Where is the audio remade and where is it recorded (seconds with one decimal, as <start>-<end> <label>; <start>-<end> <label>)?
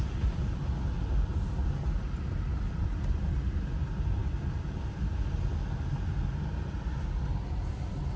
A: 0.0-8.2 recorded